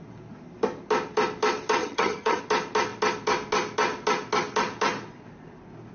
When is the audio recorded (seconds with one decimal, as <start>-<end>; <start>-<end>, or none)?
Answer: 0.0-1.8; 2.4-5.9